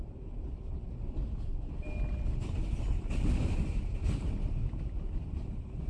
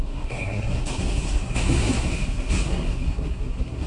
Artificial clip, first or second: second